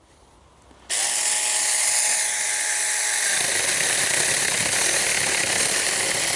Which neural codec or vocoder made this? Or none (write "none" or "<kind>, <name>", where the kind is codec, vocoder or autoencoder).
none